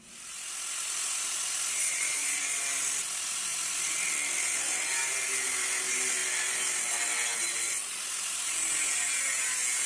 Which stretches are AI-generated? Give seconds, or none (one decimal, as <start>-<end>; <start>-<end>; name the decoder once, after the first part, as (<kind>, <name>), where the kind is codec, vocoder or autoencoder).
1.8-2.6 (vocoder, Vocos)